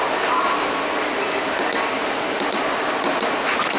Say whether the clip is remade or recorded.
recorded